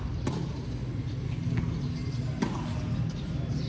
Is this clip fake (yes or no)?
no